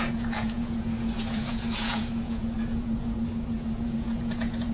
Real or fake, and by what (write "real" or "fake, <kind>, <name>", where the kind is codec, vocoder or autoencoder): fake, vocoder, Vocos